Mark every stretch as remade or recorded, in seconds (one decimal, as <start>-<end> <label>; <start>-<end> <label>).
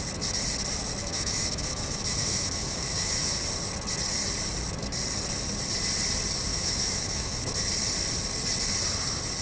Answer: 0.0-1.0 recorded; 1.0-3.4 remade; 3.4-6.5 recorded; 6.5-7.4 remade; 7.4-9.4 recorded